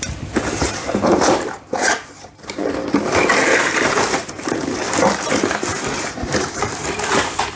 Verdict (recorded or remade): remade